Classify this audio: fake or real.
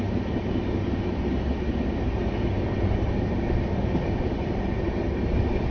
real